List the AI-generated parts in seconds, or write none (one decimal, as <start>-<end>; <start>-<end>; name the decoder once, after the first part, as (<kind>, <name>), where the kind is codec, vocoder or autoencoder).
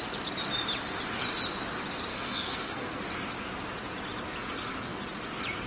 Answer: 2.1-3.0 (codec, SNAC)